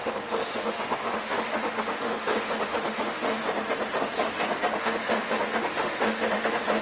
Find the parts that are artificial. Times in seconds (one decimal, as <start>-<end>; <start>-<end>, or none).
0.0-3.4; 4.8-6.8